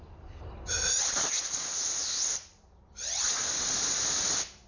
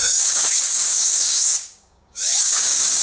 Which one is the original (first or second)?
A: first